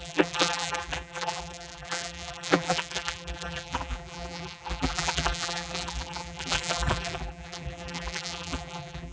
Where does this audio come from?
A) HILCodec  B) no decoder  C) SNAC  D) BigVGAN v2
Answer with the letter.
D